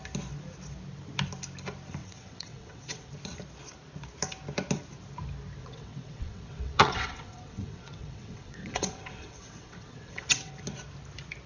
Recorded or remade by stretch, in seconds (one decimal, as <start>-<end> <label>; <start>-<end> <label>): 0.0-2.0 recorded; 2.0-3.1 remade; 3.1-5.6 recorded; 5.6-10.5 remade; 10.5-11.5 recorded